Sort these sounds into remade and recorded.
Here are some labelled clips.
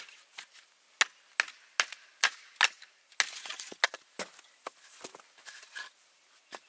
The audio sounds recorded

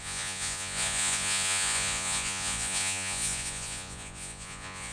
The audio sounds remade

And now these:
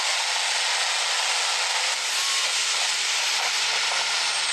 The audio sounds recorded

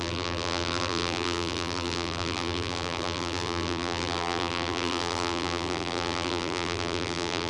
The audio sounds remade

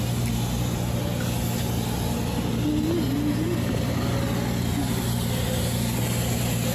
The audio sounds recorded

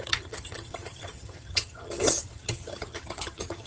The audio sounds remade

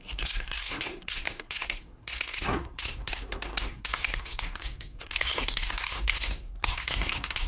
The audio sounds remade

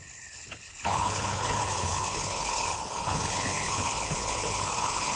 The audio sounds remade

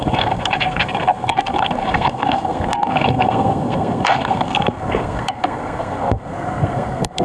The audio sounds remade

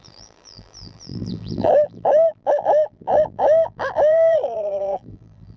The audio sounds remade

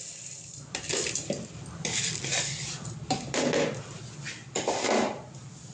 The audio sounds remade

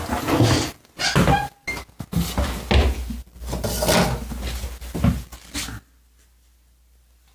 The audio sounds recorded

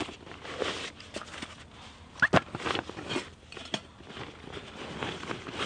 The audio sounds recorded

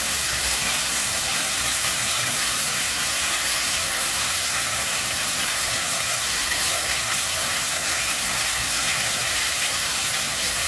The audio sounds remade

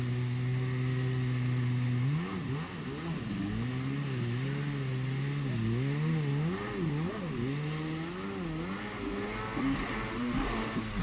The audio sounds recorded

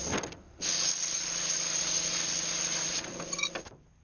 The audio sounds recorded